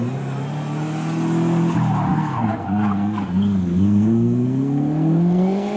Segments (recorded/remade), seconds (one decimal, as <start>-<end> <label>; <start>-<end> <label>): 0.0-2.1 recorded; 2.1-5.8 remade